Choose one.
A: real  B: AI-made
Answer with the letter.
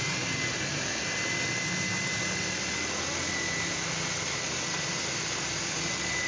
A